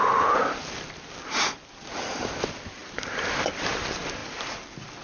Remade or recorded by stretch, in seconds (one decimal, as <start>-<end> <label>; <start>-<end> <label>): 0.0-2.8 recorded; 2.8-3.3 remade; 3.3-5.0 recorded